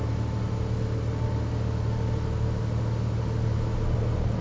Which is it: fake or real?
real